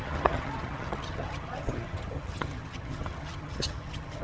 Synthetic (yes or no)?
yes